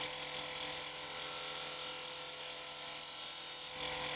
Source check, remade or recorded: recorded